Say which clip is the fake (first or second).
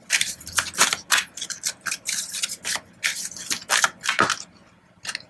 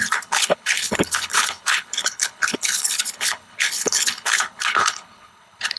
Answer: second